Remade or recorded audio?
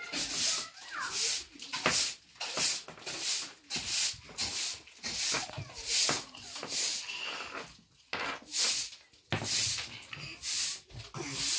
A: recorded